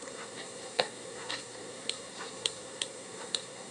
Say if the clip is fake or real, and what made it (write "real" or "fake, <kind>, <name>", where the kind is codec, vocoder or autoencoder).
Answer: fake, codec, SNAC